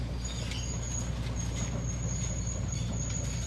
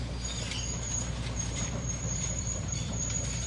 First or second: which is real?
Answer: first